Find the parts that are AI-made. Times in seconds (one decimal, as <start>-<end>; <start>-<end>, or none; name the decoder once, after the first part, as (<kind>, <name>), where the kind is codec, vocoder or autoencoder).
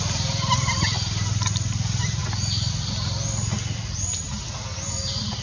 none